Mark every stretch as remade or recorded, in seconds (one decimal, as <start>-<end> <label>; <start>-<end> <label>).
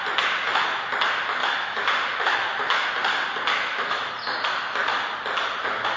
0.0-1.4 recorded; 1.4-2.9 remade; 2.9-3.5 recorded; 3.5-4.1 remade; 4.1-6.0 recorded